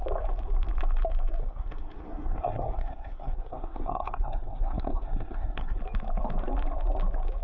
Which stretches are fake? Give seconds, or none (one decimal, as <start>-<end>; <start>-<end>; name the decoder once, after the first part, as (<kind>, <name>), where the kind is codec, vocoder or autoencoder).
1.4-5.8 (codec, SNAC)